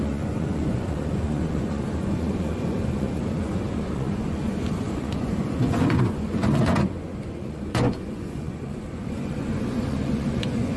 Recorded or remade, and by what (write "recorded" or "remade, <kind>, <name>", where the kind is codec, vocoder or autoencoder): remade, vocoder, Vocos